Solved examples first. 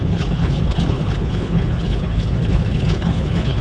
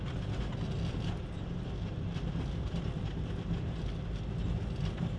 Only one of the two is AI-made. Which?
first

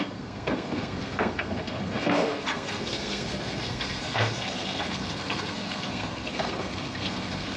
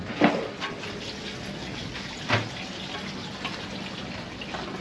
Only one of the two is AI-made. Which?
first